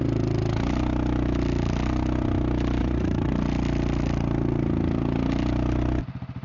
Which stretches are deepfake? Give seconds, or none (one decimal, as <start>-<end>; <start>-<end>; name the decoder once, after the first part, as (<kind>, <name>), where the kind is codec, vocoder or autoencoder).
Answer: 2.8-3.3 (vocoder, Vocos)